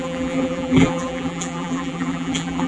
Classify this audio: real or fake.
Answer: fake